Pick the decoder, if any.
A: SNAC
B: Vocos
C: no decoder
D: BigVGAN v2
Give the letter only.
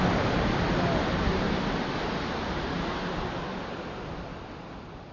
C